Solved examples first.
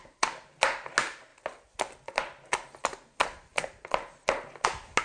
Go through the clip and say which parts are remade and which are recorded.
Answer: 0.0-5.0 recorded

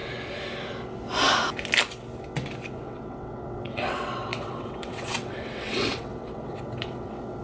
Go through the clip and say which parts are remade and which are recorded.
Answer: 0.0-2.7 recorded; 2.7-7.4 remade

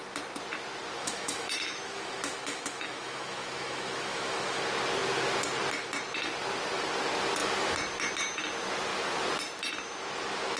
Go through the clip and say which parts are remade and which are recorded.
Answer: 0.0-1.0 recorded; 1.0-4.6 remade; 4.6-10.6 recorded

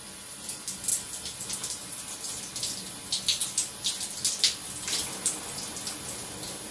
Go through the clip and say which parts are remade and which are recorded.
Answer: 0.0-6.7 recorded

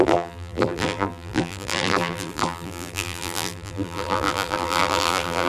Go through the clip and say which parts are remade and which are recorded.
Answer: 0.0-5.5 remade